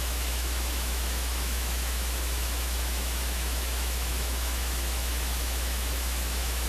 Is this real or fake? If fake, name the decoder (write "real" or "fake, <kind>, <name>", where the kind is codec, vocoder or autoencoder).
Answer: fake, autoencoder, DAC-VAE